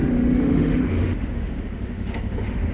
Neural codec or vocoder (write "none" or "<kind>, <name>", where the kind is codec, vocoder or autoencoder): autoencoder, DAC-VAE